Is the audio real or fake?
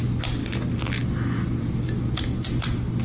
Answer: real